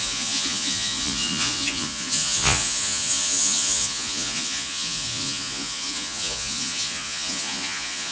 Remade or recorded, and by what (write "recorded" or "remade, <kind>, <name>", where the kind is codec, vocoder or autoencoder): remade, vocoder, Vocos